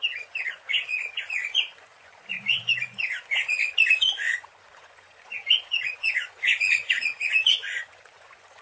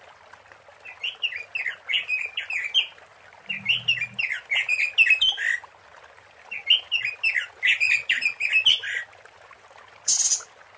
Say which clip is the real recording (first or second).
second